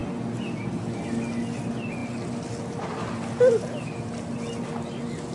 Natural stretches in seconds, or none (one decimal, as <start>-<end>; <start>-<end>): 0.0-5.3

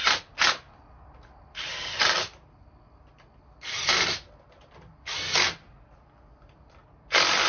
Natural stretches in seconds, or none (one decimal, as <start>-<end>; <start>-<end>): 0.0-7.5

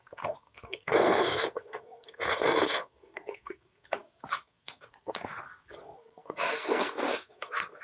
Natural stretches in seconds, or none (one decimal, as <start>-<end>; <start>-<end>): none